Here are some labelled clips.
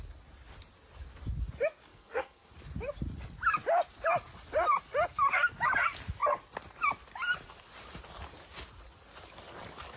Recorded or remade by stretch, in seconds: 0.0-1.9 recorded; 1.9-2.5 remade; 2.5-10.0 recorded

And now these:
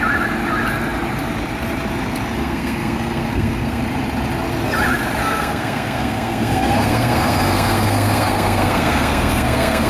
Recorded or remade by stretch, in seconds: 0.0-2.4 recorded; 2.4-3.8 remade; 3.8-5.2 recorded; 5.2-9.9 remade